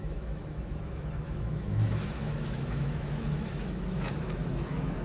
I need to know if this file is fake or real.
fake